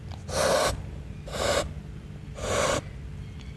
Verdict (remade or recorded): recorded